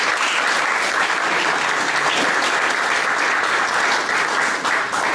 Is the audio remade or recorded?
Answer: recorded